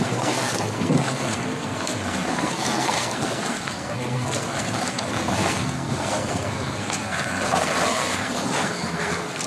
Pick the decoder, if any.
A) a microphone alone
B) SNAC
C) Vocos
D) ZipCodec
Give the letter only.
B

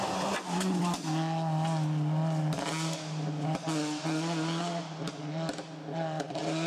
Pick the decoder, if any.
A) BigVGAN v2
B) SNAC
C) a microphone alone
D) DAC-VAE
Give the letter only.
C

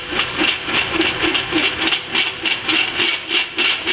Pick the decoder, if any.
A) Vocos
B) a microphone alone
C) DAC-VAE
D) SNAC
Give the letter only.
B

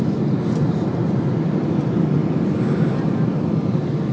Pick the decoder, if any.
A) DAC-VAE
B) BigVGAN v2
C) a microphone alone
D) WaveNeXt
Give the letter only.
C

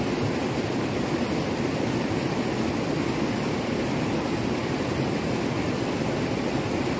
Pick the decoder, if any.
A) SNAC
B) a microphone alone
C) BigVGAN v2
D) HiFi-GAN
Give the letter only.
B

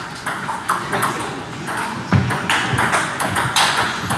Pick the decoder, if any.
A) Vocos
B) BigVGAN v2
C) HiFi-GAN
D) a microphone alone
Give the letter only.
A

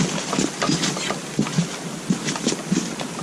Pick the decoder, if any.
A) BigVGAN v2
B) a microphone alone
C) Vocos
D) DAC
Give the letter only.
B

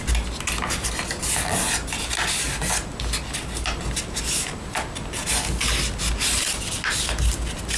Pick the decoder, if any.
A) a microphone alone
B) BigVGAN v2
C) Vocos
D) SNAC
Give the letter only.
A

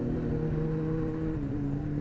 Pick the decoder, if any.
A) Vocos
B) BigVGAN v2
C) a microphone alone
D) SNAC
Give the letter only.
C